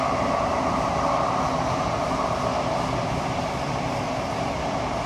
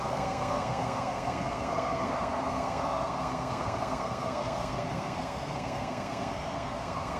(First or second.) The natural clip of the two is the first